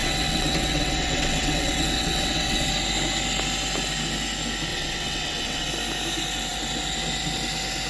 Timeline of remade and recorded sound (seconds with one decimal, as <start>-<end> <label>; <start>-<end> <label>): 0.0-2.7 remade; 2.7-4.7 recorded; 4.7-5.7 remade; 5.7-7.9 recorded